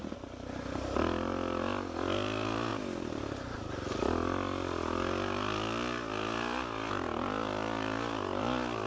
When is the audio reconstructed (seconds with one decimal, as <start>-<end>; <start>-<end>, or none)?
none